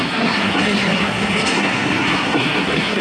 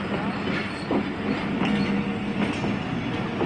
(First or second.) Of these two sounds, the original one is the second